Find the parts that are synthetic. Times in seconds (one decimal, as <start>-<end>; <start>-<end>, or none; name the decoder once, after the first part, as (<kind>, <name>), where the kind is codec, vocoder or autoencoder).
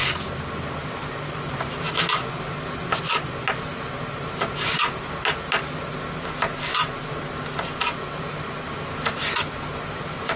none